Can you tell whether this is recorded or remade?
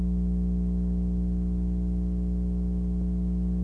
recorded